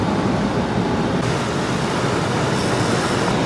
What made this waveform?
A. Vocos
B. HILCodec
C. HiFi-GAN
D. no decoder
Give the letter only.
D